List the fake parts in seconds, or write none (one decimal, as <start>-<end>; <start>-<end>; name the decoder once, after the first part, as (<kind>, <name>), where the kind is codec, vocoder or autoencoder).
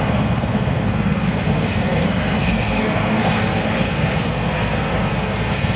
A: 0.0-5.8 (codec, SNAC)